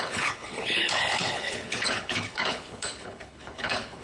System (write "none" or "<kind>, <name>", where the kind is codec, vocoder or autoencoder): codec, HILCodec